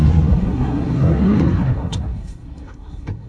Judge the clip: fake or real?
fake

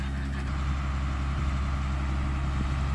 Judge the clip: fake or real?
real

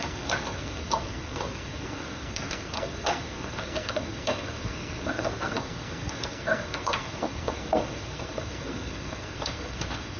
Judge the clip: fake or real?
fake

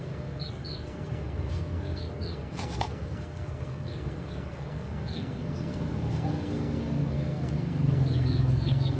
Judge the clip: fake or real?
fake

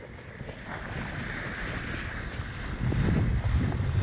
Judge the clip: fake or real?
real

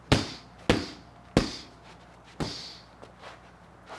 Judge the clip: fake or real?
real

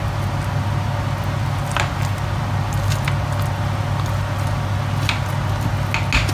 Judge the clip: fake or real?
real